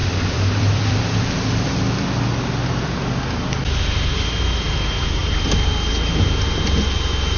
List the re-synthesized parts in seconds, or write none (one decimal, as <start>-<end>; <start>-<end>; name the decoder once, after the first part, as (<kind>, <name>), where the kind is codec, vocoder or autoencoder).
0.0-3.2 (vocoder, BigVGAN v2); 5.2-6.3